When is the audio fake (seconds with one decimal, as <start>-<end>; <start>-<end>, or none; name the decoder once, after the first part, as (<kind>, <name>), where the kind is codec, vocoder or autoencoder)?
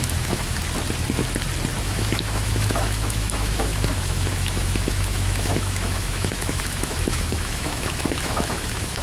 0.0-0.6 (autoencoder, DAC-VAE); 1.8-9.0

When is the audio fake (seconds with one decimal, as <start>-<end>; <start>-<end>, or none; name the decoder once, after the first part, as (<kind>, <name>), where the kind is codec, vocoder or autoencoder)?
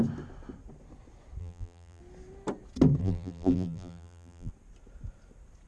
1.4-2.0 (vocoder, BigVGAN v2); 3.0-4.5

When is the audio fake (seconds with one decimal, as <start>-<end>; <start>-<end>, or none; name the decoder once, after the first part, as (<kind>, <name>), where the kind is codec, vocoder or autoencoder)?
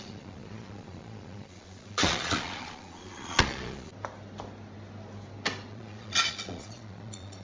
0.0-3.9 (vocoder, Vocos); 5.7-7.4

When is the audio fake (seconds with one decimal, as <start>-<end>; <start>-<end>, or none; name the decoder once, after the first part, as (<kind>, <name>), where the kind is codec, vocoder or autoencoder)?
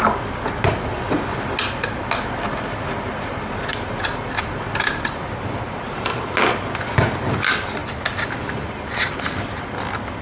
3.7-6.3 (vocoder, BigVGAN v2); 7.8-9.6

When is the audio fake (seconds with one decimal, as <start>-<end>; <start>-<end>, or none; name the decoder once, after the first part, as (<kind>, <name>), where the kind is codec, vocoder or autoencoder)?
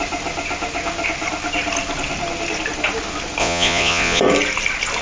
3.4-4.2 (vocoder, Vocos)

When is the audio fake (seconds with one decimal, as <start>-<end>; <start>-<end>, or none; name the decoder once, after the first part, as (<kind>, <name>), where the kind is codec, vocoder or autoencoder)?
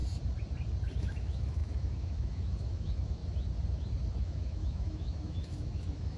1.0-3.2 (autoencoder, DAC-VAE); 4.2-6.2